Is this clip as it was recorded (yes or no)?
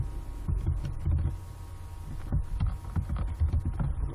yes